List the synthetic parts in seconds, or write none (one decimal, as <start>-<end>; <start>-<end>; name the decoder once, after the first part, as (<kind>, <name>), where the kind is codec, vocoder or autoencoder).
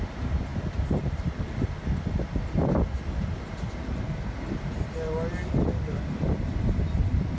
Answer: none